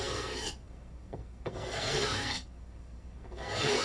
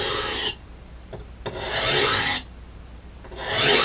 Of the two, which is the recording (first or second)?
second